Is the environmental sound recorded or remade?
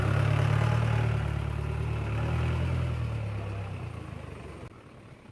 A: recorded